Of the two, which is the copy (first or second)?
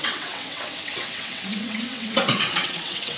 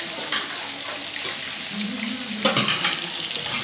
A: first